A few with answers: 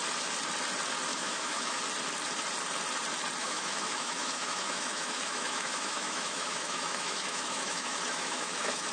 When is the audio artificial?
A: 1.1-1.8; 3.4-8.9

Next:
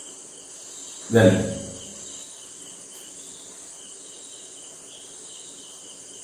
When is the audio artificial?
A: 1.9-3.1

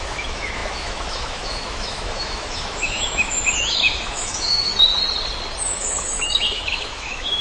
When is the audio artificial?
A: 0.0-4.7; 5.6-7.4

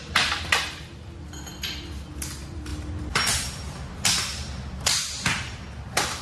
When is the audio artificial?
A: none

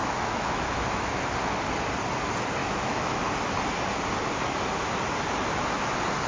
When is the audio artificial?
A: 0.0-1.2; 2.6-3.2